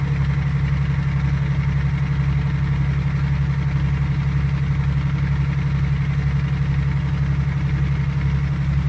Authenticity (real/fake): real